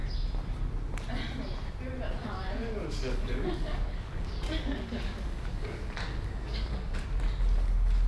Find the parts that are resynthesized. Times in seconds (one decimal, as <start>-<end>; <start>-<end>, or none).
2.2-7.1